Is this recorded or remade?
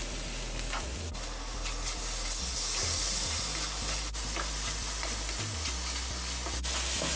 recorded